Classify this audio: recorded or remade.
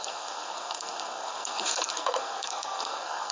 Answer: remade